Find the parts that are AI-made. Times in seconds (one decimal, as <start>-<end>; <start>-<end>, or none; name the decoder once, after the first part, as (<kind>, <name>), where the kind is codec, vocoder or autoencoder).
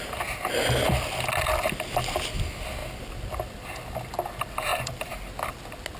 4.7-5.2 (vocoder, BigVGAN v2)